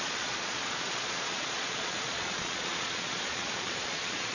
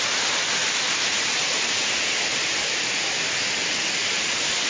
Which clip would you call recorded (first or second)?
second